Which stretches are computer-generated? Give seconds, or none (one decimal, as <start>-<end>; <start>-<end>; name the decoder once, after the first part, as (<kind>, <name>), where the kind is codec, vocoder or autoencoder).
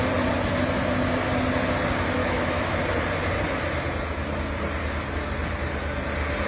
2.2-2.8 (autoencoder, DAC-VAE)